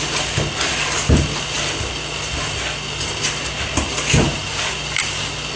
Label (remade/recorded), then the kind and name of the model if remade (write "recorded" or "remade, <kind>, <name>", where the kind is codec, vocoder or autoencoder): recorded